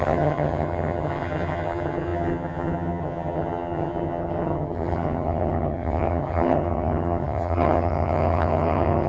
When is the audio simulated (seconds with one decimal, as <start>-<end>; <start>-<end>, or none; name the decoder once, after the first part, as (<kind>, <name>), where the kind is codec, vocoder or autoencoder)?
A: 0.0-9.1 (vocoder, HiFi-GAN)